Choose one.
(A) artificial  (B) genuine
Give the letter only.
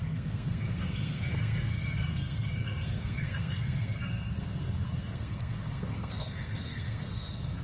A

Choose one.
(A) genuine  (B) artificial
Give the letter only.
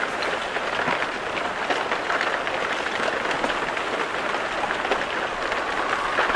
A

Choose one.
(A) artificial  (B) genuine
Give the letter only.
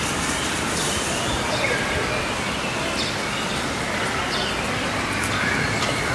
B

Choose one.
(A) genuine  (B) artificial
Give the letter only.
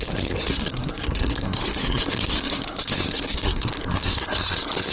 B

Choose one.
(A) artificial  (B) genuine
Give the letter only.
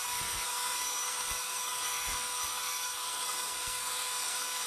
A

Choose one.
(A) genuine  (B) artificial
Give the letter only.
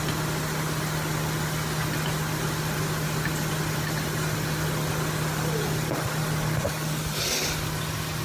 A